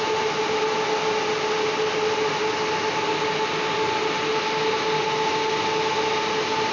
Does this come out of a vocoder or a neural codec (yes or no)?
no